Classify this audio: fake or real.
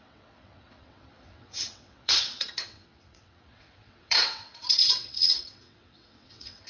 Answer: fake